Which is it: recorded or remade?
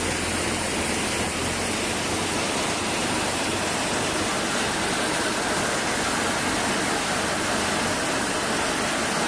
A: recorded